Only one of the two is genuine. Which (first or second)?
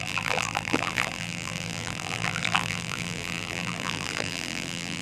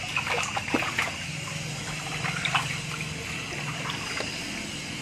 second